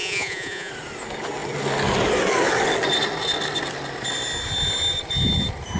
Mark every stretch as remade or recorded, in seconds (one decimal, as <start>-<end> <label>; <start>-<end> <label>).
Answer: 0.0-0.7 remade; 0.7-5.8 recorded